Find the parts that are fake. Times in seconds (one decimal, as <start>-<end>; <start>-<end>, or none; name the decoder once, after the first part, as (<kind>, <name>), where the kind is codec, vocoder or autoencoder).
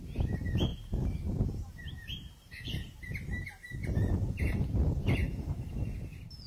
0.7-4.6 (vocoder, BigVGAN v2); 5.2-5.8